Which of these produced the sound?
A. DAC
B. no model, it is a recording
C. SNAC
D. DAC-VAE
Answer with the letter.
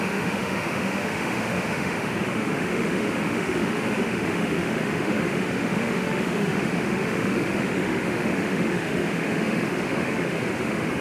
D